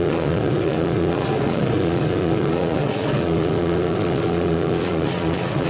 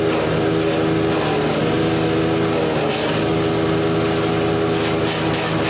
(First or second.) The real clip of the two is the second